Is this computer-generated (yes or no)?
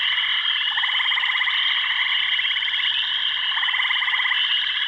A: no